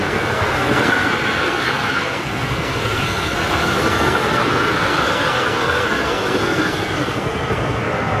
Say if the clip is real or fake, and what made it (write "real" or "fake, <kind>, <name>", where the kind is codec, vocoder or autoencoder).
fake, codec, SNAC